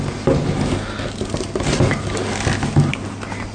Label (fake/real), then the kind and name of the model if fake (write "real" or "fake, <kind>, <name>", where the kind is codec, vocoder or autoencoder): real